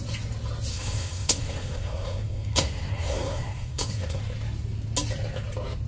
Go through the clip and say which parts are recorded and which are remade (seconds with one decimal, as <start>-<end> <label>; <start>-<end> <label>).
0.0-0.7 recorded; 0.7-4.2 remade; 4.2-5.9 recorded